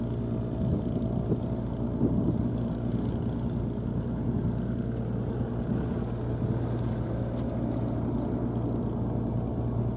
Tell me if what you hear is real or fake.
real